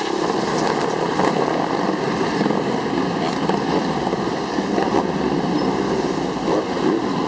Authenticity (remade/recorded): recorded